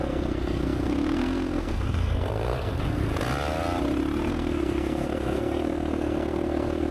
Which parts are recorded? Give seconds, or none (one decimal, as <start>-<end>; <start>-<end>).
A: 3.0-4.3